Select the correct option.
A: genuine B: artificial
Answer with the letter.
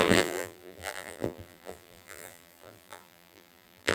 B